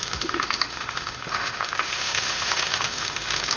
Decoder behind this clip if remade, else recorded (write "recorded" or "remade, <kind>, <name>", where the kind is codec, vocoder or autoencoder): remade, autoencoder, DAC-VAE